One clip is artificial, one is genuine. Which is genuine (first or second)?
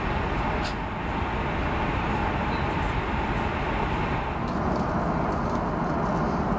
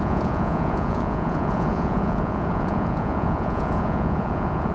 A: first